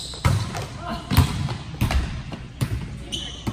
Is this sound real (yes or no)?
yes